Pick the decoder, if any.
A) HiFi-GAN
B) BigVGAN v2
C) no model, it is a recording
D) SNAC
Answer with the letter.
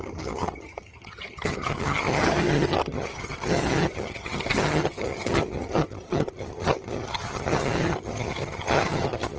A